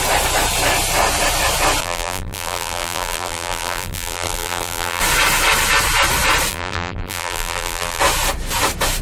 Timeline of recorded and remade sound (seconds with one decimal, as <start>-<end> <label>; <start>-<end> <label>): 0.0-1.8 recorded; 1.8-5.0 remade; 5.0-6.5 recorded; 6.5-8.0 remade; 8.0-9.0 recorded